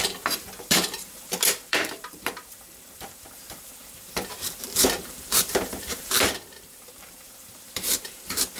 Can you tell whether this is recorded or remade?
remade